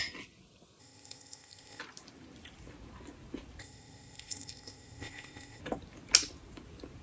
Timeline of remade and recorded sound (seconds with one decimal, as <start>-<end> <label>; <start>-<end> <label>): 0.0-0.8 recorded; 0.8-1.8 remade; 1.8-3.6 recorded; 3.6-5.6 remade; 5.6-7.0 recorded